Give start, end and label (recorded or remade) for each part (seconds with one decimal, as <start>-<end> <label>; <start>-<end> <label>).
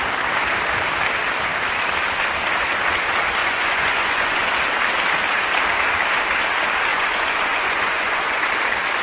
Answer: 0.0-3.4 recorded; 3.4-4.5 remade; 4.5-6.9 recorded; 6.9-8.5 remade; 8.5-9.0 recorded